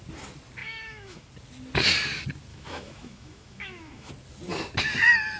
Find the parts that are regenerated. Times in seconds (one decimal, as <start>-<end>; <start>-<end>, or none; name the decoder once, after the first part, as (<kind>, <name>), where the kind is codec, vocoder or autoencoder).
0.6-1.3 (autoencoder, DAC-VAE); 2.5-4.1